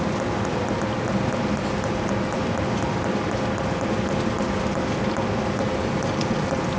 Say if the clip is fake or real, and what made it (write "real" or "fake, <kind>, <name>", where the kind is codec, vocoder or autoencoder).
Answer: real